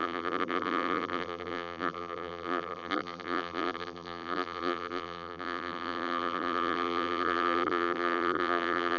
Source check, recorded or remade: remade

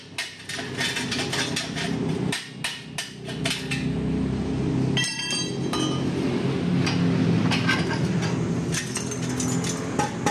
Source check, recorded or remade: recorded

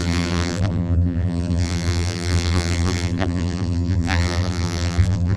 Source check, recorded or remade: remade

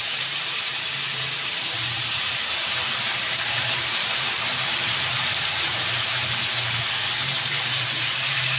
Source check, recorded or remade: remade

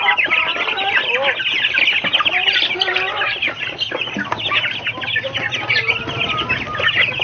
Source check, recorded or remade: recorded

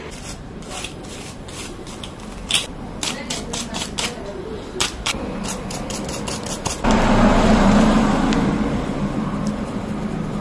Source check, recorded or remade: remade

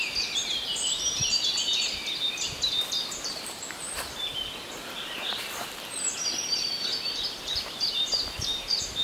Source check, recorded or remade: remade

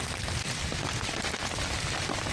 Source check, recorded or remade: recorded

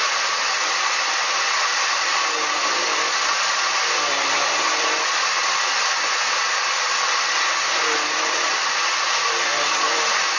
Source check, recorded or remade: remade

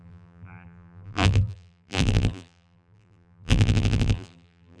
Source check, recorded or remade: remade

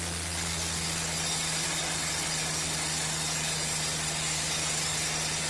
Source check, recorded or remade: recorded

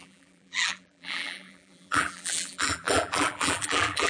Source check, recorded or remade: remade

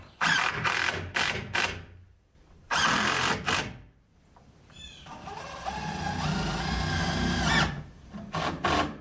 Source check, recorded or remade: remade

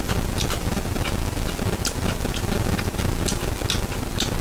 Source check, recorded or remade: recorded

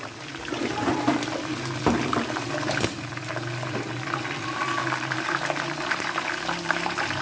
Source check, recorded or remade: remade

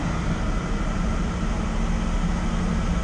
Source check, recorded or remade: recorded